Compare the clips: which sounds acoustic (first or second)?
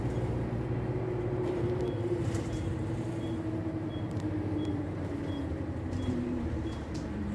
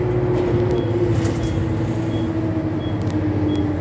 second